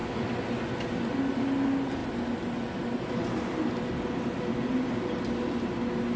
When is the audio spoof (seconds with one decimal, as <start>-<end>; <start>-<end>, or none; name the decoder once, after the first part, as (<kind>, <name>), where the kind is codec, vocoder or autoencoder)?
none